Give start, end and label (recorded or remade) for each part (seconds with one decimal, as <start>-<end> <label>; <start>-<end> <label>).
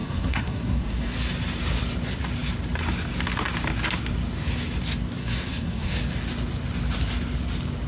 0.0-1.1 remade; 1.1-5.2 recorded; 5.2-6.0 remade; 6.0-7.9 recorded